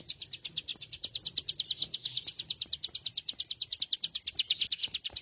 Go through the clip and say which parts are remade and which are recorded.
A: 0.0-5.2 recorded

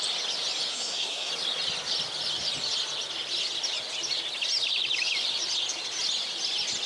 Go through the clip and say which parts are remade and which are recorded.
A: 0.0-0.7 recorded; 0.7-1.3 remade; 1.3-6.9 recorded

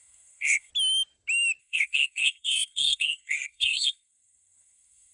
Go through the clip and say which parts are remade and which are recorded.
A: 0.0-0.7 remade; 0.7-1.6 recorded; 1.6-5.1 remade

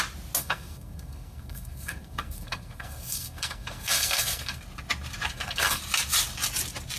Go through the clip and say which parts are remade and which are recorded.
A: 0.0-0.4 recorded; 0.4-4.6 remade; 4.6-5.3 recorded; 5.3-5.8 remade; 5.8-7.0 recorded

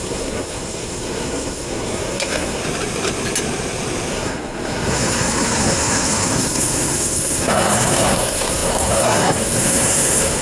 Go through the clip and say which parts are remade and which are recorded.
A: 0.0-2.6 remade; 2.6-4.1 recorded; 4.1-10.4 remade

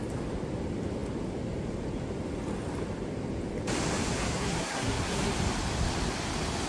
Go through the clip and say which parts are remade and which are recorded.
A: 0.0-4.2 recorded; 4.2-5.3 remade; 5.3-6.7 recorded